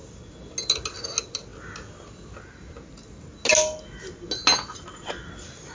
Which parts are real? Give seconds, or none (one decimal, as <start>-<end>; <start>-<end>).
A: 0.0-5.7